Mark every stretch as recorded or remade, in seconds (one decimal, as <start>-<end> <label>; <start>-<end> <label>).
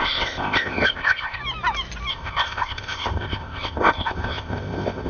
0.0-1.4 remade; 1.4-2.1 recorded; 2.1-5.1 remade